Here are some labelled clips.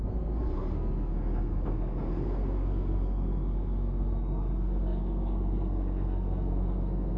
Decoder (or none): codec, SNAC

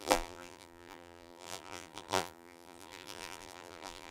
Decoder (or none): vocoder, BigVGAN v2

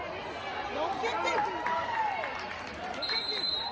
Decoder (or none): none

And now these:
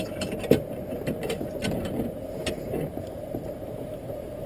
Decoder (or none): vocoder, BigVGAN v2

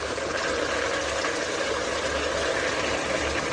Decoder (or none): none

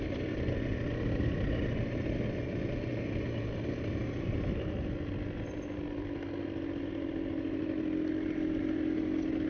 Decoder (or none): none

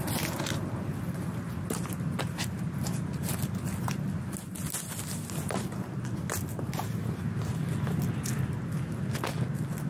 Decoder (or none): none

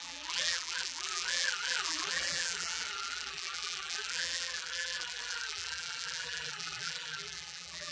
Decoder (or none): vocoder, BigVGAN v2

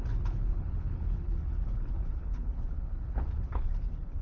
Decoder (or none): codec, HILCodec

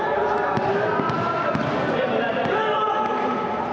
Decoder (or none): none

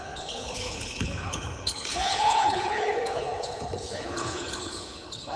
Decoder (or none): codec, HILCodec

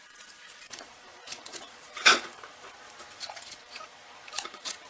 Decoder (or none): vocoder, Vocos